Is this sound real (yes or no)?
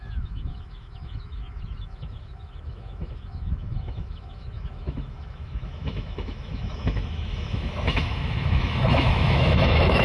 no